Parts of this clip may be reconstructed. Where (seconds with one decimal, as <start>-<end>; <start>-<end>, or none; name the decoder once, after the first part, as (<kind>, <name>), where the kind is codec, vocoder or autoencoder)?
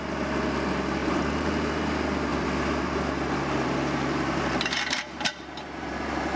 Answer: 1.0-1.7 (vocoder, BigVGAN v2); 2.3-6.4